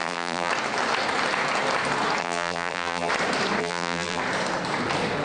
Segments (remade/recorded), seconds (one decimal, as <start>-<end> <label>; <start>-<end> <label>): 0.0-0.5 remade; 0.5-2.2 recorded; 2.2-3.1 remade; 3.1-3.6 recorded; 3.6-4.2 remade; 4.2-5.2 recorded